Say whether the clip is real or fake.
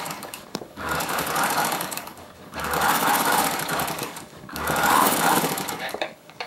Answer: fake